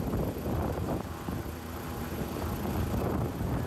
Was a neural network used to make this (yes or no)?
no